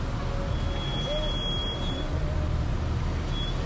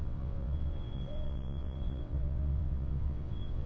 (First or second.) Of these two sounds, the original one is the first